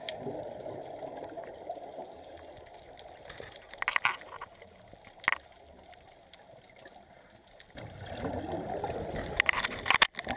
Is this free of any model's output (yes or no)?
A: yes